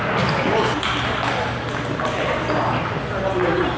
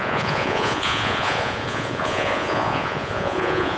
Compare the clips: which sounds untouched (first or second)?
first